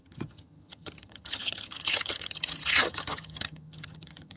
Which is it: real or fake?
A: fake